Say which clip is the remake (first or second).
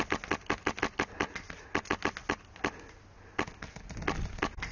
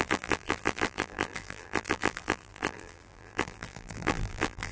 second